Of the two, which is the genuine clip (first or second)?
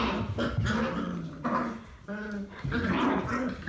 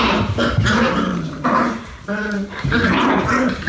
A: first